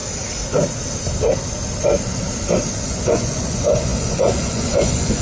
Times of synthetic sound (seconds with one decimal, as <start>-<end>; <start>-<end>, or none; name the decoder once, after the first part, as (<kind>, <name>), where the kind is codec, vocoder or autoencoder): 2.7-5.2 (vocoder, Vocos)

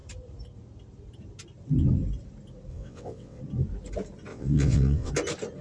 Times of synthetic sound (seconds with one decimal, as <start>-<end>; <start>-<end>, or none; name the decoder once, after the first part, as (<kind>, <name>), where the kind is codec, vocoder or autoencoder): 2.7-3.4 (vocoder, WaveNeXt); 4.3-5.1